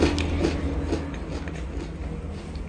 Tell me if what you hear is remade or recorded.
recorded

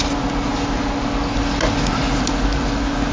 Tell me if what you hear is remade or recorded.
recorded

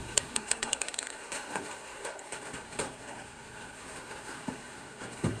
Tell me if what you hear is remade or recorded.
remade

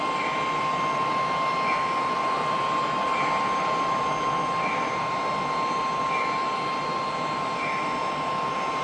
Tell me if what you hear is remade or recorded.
recorded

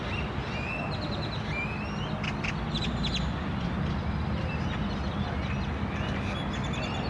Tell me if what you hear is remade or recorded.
recorded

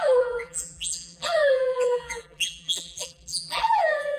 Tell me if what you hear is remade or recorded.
remade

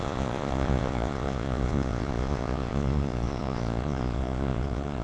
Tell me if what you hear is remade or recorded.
remade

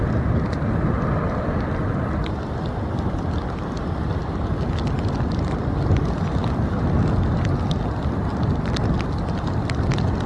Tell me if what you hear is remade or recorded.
recorded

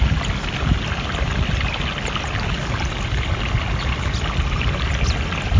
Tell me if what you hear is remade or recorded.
recorded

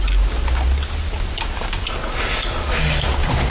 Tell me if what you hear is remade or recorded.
recorded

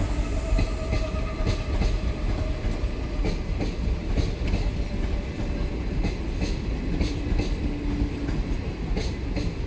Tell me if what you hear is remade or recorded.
recorded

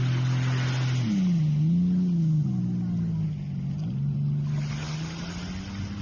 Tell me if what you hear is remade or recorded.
recorded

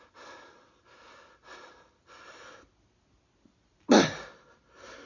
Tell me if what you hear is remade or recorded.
recorded